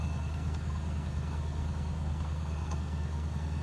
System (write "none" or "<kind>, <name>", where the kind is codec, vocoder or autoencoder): codec, SNAC